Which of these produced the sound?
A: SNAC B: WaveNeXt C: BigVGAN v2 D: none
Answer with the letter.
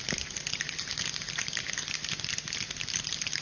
D